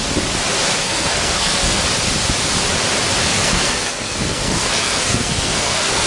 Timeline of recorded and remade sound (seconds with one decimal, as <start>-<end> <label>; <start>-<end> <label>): 0.0-0.8 recorded; 0.8-1.8 remade; 1.8-3.2 recorded; 3.2-6.1 remade